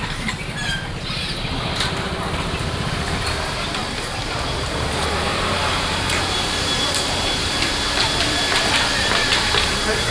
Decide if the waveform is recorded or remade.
remade